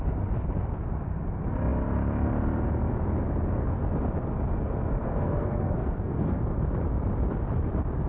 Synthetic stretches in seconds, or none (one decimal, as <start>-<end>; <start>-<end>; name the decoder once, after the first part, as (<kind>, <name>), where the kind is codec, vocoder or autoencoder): 5.0-6.4 (codec, SNAC)